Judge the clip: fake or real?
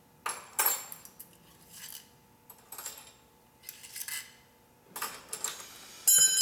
real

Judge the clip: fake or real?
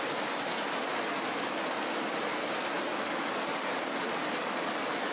real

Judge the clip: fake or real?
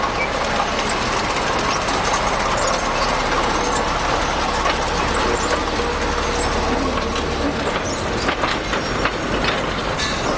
real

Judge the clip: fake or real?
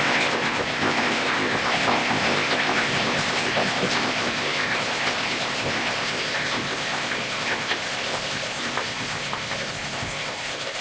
fake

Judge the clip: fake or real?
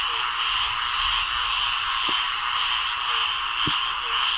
real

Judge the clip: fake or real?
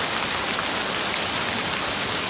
real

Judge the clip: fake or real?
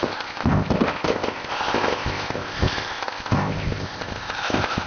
fake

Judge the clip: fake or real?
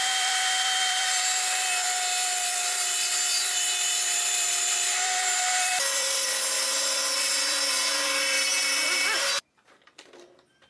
fake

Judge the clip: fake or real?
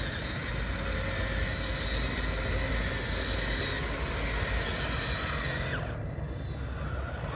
real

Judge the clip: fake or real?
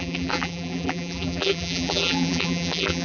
fake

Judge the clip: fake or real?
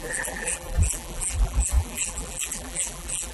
fake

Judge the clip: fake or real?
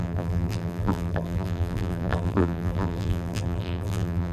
fake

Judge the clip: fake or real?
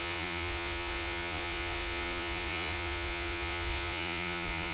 fake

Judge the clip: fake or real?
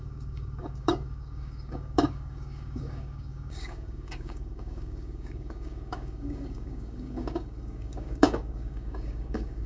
fake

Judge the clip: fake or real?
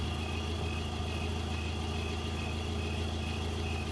real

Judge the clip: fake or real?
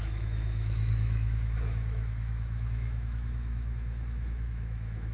fake